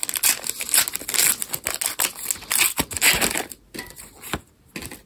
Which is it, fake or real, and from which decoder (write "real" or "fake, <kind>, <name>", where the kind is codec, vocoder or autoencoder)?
real